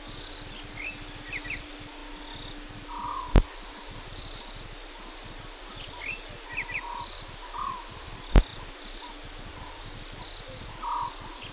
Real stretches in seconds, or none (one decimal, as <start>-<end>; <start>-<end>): 0.0-11.5

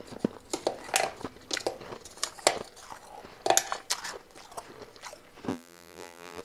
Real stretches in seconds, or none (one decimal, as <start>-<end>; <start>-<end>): 0.0-5.5

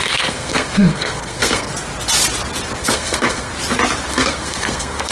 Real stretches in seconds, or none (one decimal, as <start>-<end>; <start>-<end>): 1.7-2.8; 3.5-4.1